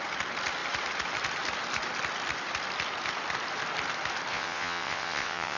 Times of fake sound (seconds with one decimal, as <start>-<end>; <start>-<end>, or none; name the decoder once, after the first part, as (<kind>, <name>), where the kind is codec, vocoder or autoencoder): 4.3-5.6 (vocoder, WaveNeXt)